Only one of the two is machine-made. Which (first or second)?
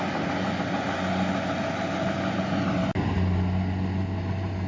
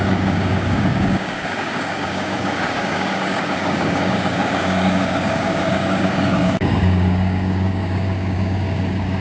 second